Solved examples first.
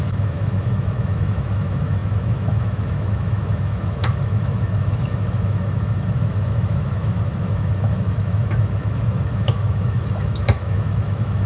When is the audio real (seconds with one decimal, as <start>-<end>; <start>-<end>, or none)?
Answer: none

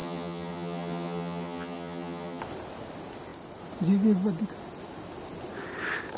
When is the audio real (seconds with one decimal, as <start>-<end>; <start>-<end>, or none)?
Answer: 2.4-6.2

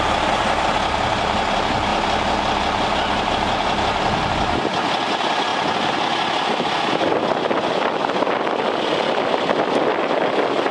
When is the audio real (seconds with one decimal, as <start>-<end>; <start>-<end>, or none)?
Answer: 0.0-10.7

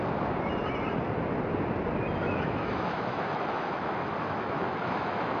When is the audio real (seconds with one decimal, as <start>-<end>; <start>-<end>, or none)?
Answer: 0.0-2.2

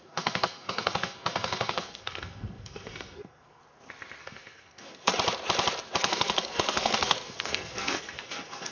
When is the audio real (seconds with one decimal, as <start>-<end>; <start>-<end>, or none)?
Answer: 3.6-4.2; 5.1-6.0

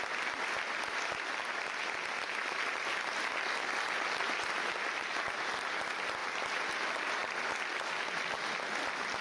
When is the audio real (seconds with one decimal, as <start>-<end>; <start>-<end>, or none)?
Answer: 0.0-6.2; 6.7-9.2